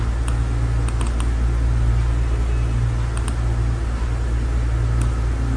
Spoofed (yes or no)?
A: no